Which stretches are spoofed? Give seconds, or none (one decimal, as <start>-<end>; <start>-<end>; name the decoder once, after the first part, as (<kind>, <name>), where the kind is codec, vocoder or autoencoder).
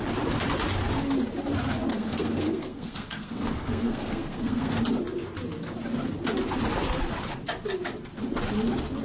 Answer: 1.9-4.8 (codec, SNAC)